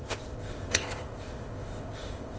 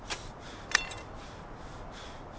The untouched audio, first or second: second